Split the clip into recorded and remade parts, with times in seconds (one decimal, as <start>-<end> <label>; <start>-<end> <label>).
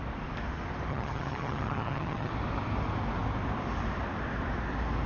0.0-0.9 recorded; 0.9-2.3 remade; 2.3-5.1 recorded